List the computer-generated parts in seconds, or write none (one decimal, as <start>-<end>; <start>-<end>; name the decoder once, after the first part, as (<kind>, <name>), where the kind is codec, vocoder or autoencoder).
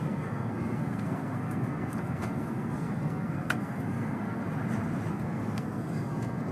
0.0-4.4 (codec, SNAC); 5.1-6.5